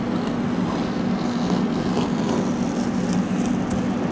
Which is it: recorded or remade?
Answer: recorded